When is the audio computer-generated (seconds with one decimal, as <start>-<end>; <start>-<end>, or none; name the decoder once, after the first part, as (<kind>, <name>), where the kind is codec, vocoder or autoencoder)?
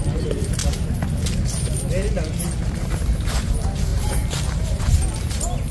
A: 0.0-0.6 (vocoder, BigVGAN v2); 2.6-5.7